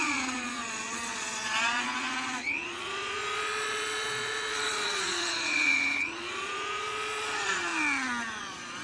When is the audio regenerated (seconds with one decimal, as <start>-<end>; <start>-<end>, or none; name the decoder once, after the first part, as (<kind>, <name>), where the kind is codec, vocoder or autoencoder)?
0.0-7.7 (vocoder, Vocos); 8.4-8.8